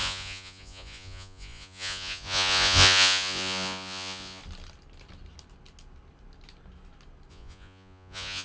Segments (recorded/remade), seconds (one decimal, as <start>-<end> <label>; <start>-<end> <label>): 0.0-4.4 remade; 4.4-7.3 recorded; 7.3-8.4 remade